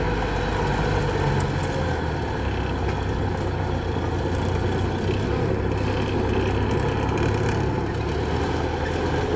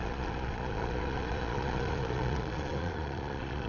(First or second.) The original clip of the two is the first